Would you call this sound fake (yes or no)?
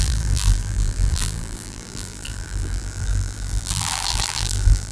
yes